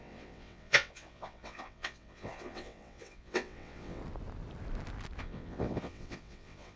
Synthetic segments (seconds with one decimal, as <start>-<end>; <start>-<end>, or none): 0.0-4.0; 5.2-6.8